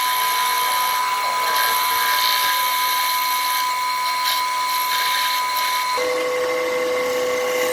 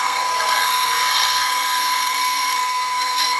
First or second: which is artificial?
second